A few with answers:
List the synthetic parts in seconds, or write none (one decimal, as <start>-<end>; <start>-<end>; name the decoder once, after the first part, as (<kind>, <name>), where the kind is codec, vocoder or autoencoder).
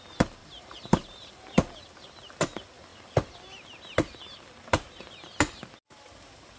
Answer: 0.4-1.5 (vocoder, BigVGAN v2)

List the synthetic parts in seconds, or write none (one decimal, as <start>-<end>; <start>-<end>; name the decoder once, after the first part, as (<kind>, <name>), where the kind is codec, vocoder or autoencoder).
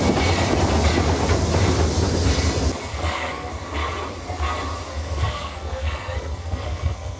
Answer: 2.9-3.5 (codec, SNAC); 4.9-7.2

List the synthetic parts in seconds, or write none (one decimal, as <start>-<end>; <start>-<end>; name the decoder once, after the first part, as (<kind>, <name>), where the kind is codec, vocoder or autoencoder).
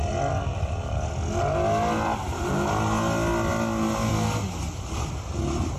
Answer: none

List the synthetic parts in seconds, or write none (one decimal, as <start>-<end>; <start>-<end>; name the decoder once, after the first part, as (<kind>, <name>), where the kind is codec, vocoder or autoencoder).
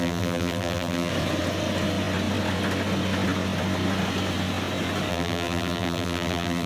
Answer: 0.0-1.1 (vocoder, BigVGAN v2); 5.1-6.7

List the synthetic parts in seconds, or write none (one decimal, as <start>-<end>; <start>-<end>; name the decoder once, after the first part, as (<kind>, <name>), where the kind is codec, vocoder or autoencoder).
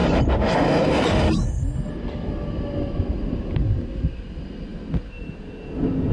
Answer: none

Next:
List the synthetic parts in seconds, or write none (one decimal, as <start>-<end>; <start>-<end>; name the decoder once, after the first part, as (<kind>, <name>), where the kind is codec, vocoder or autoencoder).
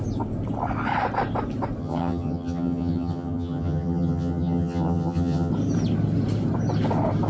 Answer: 1.8-5.5 (vocoder, HiFi-GAN)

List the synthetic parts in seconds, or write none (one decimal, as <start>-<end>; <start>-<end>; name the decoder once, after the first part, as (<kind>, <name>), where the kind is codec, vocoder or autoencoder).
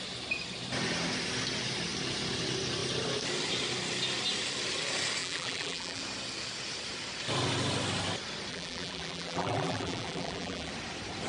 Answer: 5.2-6.0 (vocoder, BigVGAN v2); 8.5-10.7